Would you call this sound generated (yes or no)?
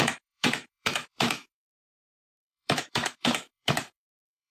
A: yes